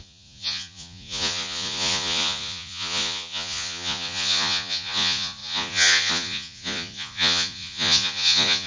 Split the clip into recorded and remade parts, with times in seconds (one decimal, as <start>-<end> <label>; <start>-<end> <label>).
0.0-8.7 remade